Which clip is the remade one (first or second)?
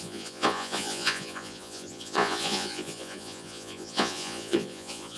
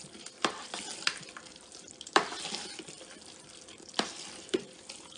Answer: first